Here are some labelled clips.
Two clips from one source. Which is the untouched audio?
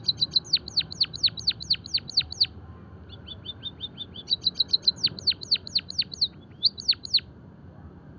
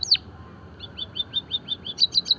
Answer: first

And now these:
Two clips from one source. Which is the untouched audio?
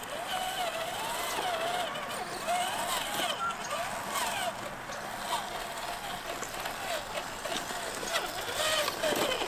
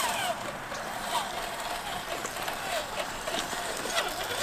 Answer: first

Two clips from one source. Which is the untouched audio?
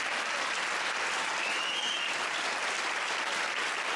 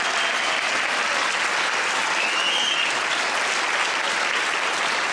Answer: second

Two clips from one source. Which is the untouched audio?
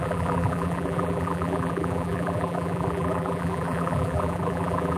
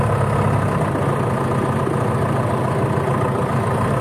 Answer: second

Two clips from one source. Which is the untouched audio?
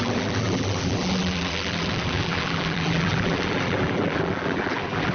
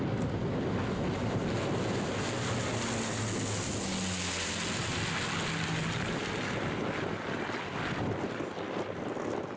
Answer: second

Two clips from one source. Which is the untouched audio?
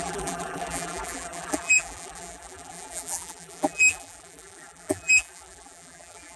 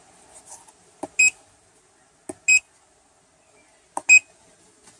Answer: second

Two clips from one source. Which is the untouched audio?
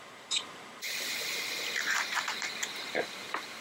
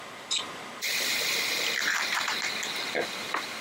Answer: second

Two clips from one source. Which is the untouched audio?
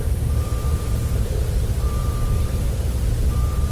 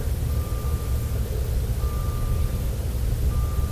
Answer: second